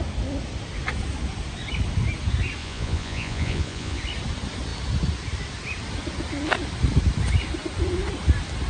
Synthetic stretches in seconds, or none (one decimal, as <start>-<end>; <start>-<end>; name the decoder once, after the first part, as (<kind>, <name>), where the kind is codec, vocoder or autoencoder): 2.6-4.0 (vocoder, Vocos)